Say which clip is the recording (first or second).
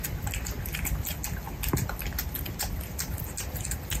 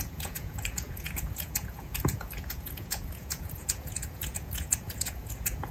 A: first